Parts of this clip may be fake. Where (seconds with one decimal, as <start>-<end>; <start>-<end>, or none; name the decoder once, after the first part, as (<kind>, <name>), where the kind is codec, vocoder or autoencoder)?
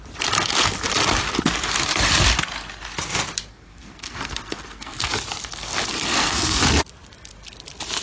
3.5-5.1 (codec, SNAC); 5.9-6.6